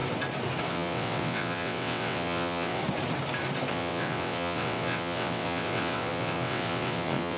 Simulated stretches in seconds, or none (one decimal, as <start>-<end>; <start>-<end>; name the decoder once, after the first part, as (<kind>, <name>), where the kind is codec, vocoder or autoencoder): 0.7-2.8 (vocoder, WaveNeXt); 3.7-7.4